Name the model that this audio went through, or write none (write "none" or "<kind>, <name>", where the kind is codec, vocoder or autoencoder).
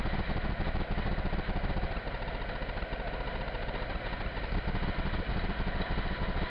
none